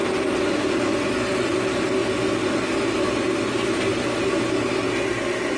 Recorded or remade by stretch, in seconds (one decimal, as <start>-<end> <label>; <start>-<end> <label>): 0.0-5.6 recorded